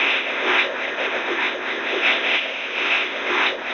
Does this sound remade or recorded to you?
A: remade